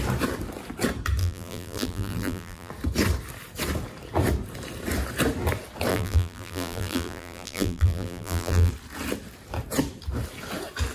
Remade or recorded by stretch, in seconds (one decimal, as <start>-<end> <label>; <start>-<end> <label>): 0.0-1.2 recorded; 1.2-2.7 remade; 2.7-5.9 recorded; 5.9-8.7 remade; 8.7-10.9 recorded